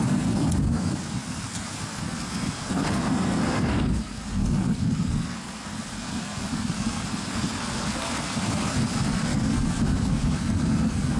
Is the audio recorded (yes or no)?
no